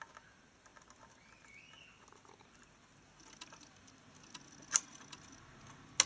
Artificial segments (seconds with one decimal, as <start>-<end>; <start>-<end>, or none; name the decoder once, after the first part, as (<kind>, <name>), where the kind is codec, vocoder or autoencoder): none

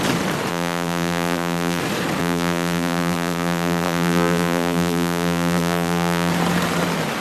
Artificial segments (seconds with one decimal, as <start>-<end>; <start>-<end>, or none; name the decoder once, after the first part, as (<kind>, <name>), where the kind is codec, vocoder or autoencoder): 0.5-1.8 (vocoder, BigVGAN v2); 2.2-6.3

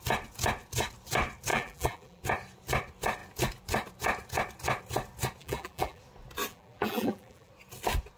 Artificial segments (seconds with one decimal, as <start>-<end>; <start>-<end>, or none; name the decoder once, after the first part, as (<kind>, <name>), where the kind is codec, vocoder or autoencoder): 1.5-2.2 (vocoder, BigVGAN v2); 5.4-6.0; 6.5-7.5

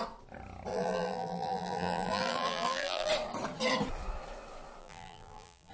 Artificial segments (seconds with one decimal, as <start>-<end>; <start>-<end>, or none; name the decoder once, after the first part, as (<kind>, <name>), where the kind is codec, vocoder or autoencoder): 0.7-3.1 (vocoder, BigVGAN v2); 4.8-5.7